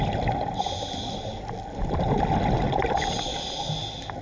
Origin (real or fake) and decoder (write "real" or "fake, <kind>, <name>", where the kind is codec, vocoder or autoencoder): real